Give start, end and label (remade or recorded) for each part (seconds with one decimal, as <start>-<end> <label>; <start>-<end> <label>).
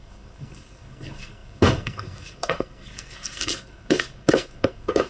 0.0-5.1 remade